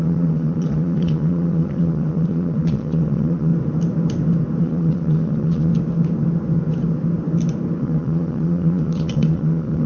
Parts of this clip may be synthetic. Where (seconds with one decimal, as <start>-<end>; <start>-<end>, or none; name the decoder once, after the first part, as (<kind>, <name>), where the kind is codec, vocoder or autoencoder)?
0.0-3.5 (vocoder, Vocos); 4.6-5.7; 7.8-9.9